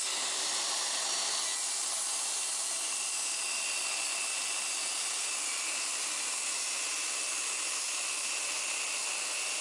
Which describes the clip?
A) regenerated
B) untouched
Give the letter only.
B